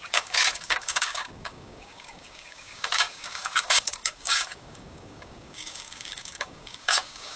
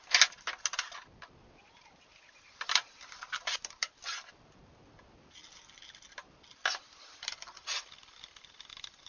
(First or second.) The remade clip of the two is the first